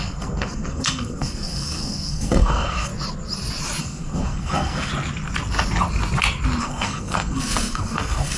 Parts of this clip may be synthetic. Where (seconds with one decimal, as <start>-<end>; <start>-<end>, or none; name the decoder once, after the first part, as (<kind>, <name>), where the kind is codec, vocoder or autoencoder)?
0.0-2.9 (codec, SNAC); 3.8-4.9; 6.6-8.4